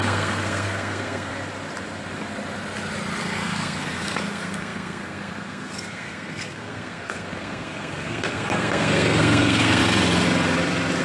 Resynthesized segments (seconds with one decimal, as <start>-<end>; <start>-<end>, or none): 0.0-1.3; 3.2-9.8